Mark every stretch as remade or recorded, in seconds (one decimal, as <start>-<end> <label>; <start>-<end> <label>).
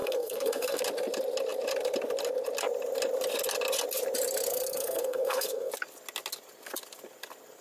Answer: 0.0-0.8 remade; 0.8-4.5 recorded; 4.5-5.7 remade; 5.7-7.6 recorded